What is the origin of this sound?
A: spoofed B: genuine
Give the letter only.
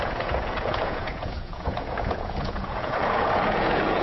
A